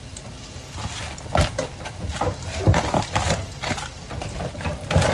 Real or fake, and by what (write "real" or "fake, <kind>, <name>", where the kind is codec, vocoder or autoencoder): real